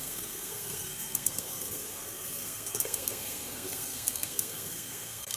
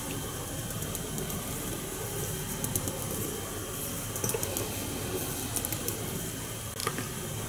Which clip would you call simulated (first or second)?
first